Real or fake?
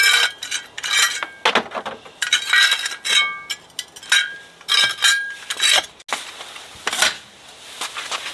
real